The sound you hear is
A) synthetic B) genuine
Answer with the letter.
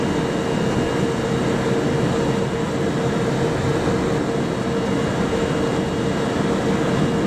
B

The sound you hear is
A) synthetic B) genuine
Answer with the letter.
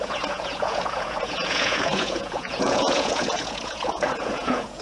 A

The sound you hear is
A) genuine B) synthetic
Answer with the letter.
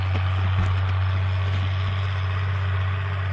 A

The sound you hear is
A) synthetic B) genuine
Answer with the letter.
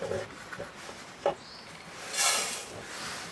B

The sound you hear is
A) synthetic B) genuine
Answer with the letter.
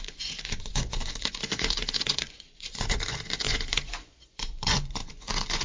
A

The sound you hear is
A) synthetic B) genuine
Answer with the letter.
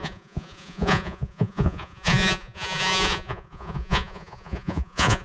A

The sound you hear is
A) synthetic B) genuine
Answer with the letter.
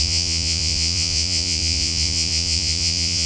A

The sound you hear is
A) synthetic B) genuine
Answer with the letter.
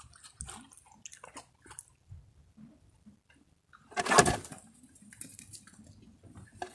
B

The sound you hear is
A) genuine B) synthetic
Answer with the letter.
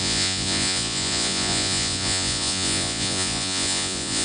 B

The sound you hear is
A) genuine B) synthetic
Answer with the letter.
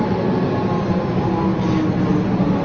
A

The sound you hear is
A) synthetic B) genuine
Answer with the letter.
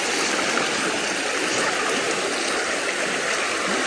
B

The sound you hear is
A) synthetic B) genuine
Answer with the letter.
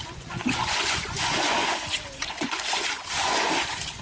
A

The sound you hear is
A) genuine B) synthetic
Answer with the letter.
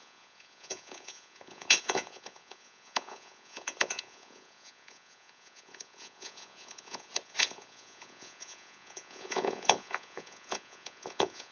B